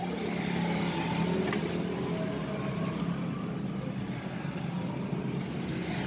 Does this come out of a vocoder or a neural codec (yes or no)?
no